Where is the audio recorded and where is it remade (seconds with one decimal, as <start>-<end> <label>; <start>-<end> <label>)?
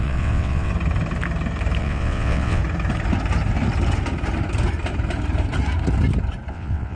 0.0-0.7 remade; 0.7-1.8 recorded; 1.8-2.6 remade; 2.6-6.5 recorded; 6.5-7.0 remade